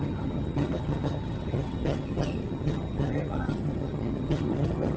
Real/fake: fake